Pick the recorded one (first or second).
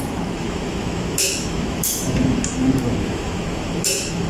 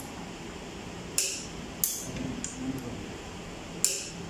second